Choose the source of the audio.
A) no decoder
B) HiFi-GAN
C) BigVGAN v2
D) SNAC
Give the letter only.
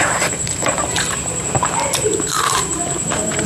C